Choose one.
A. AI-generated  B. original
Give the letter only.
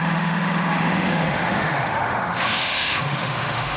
A